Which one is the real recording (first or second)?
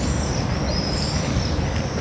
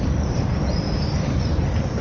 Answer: first